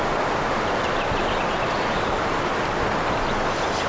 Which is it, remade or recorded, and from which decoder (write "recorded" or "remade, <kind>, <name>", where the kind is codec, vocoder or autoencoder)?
recorded